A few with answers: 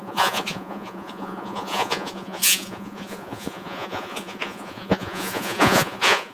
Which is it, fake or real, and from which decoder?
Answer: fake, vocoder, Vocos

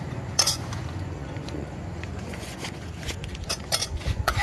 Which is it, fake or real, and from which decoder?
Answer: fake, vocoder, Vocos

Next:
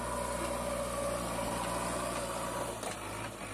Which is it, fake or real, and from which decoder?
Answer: real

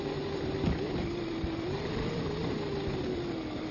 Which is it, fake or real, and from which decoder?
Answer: real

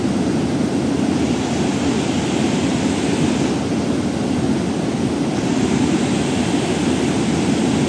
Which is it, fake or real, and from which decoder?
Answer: real